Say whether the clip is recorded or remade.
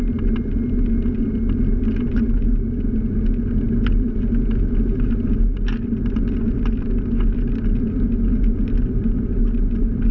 recorded